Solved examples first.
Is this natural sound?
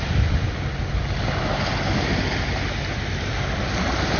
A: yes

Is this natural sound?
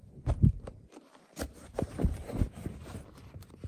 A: no